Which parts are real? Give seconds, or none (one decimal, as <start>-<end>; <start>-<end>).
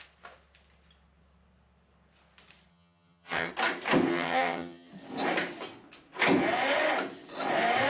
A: 0.0-2.7; 3.5-4.1; 4.9-7.9